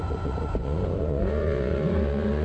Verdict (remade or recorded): remade